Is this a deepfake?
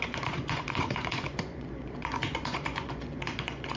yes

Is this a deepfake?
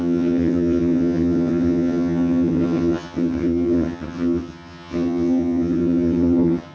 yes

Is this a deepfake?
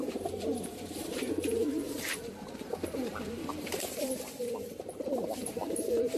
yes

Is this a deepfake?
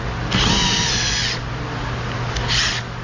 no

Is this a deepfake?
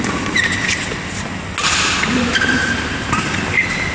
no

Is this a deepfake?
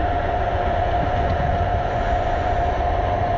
yes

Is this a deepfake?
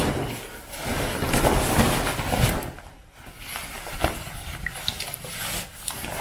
no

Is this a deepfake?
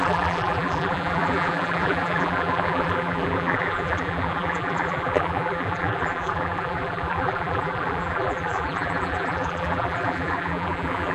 yes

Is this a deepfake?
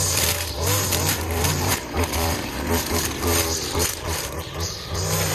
yes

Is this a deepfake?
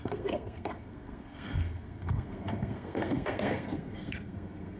yes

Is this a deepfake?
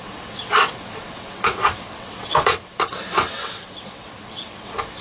yes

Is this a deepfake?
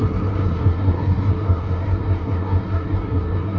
yes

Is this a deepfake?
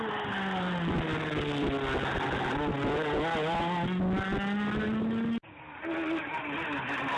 no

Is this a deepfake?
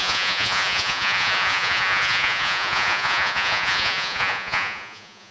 yes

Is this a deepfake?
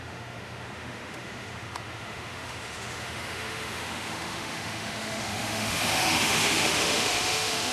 yes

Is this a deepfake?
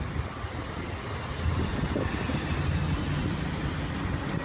no